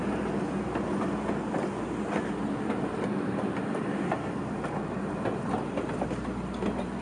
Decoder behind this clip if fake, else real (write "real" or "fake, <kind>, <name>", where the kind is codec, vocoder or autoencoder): real